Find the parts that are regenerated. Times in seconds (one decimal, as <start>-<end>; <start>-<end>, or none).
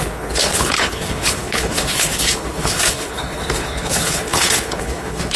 0.0-5.4